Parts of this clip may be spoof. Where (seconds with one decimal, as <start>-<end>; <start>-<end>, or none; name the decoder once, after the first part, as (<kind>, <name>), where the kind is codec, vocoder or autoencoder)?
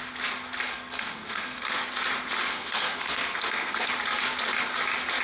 0.7-1.8 (codec, SNAC); 2.5-3.9